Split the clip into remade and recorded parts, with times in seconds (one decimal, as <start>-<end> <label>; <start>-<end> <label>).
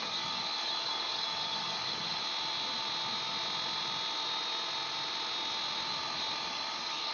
0.0-2.2 remade; 2.2-6.5 recorded; 6.5-7.1 remade